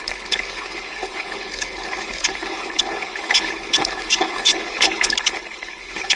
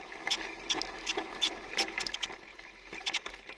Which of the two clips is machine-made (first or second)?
first